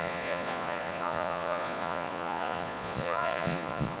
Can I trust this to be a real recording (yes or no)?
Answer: no